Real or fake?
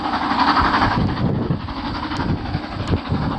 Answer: real